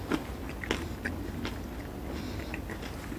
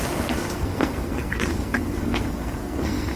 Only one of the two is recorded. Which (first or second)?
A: first